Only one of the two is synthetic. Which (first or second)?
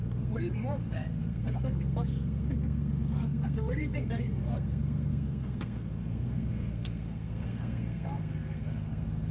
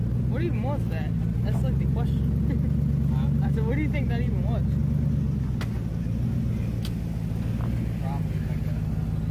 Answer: first